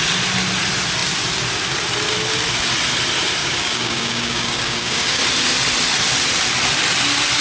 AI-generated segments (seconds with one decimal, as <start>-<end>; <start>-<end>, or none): 3.4-5.2